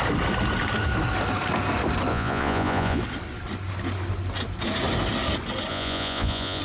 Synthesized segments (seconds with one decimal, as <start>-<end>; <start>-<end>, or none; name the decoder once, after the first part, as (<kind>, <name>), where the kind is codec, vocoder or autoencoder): 2.1-3.0 (vocoder, Vocos); 5.7-6.6